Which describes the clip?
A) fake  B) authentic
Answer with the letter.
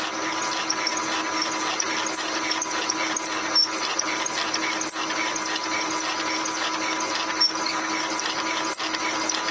B